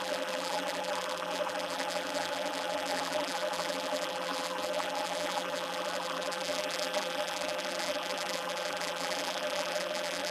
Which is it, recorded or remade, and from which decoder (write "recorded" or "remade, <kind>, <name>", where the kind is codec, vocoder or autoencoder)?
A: remade, vocoder, BigVGAN v2